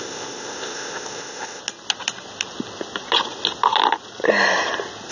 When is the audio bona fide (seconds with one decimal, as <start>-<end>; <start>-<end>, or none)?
1.6-5.1